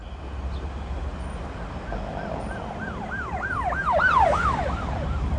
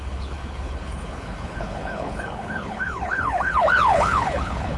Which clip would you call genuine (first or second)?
first